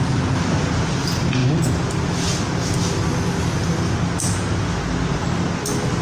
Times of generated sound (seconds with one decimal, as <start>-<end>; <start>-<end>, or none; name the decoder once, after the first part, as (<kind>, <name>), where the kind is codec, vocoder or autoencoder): none